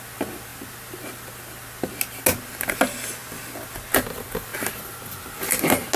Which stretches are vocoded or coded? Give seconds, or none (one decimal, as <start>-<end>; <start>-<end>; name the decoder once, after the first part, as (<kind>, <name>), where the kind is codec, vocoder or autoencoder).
none